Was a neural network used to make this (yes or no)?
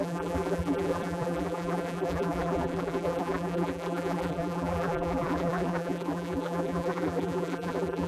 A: yes